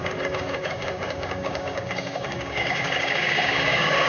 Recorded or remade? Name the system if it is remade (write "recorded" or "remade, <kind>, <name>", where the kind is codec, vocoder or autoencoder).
remade, codec, DAC